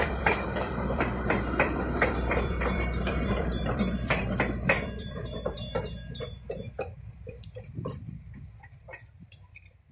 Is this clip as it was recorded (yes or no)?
no